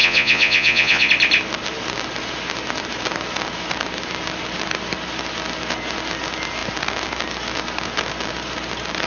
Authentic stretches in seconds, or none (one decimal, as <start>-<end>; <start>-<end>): 1.1-9.1